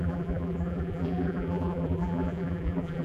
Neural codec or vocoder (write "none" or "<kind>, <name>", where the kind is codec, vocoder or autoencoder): vocoder, BigVGAN v2